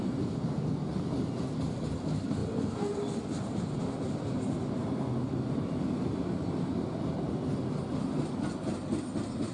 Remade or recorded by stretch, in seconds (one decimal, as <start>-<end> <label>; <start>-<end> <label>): 0.0-9.5 recorded